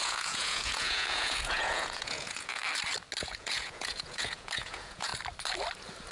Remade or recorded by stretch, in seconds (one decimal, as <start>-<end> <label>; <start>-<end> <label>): 0.0-2.6 remade; 2.6-3.2 recorded; 3.2-5.1 remade; 5.1-6.1 recorded